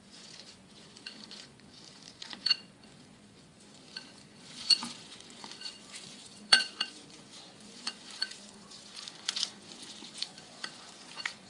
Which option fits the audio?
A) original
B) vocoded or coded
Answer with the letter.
B